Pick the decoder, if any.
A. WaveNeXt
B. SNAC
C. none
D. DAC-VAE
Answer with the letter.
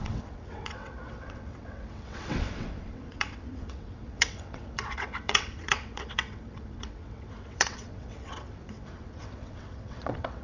A